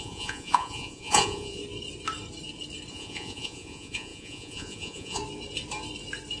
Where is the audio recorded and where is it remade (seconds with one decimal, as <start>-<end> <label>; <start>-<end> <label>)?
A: 0.0-1.6 remade; 1.6-2.9 recorded; 2.9-5.2 remade; 5.2-6.4 recorded